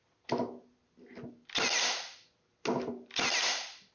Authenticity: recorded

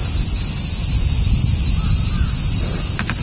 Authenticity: recorded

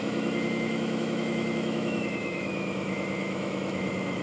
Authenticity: remade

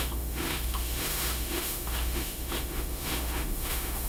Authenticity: remade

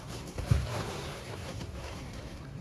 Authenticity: remade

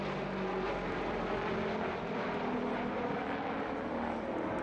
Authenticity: recorded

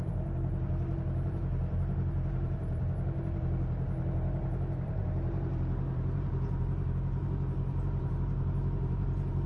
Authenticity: remade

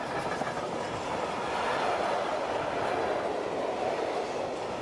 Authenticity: recorded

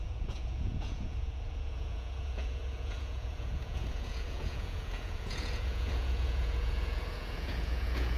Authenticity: remade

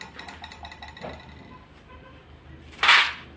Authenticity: recorded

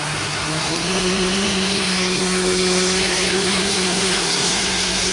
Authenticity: remade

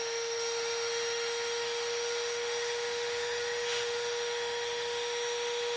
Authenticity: remade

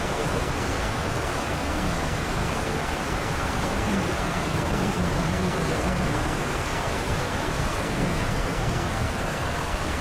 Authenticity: remade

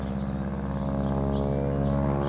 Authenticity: recorded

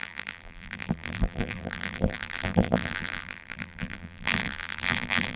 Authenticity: remade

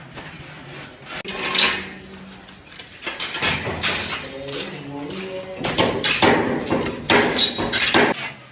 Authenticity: recorded